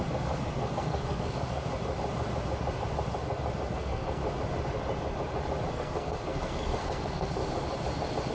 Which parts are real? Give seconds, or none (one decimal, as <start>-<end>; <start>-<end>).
1.7-3.8; 4.2-5.7; 7.4-8.3